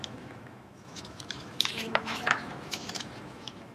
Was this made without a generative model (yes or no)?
no